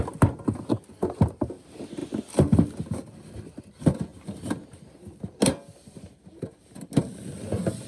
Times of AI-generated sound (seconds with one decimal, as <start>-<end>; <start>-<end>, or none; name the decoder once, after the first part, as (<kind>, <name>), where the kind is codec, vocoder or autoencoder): none